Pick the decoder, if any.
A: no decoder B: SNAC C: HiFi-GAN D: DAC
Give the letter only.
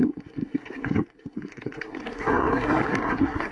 B